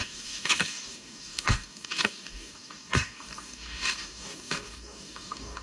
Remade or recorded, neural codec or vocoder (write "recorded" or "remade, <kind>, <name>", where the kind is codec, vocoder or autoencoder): remade, codec, DAC